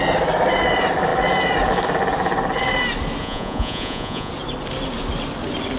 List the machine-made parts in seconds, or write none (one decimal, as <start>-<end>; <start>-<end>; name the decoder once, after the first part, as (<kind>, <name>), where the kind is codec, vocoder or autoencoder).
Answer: 3.2-4.3 (vocoder, Vocos)